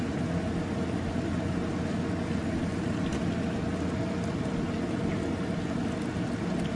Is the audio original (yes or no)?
yes